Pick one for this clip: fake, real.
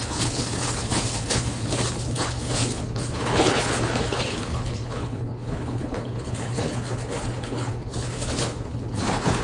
fake